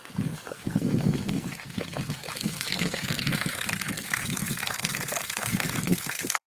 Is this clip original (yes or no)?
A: no